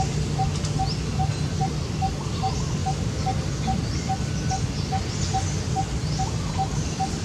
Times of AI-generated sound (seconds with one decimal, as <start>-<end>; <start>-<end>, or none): none